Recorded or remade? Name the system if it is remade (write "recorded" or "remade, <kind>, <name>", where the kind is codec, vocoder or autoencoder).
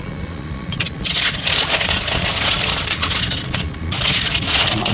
remade, vocoder, Vocos